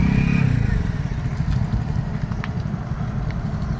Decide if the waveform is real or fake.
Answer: real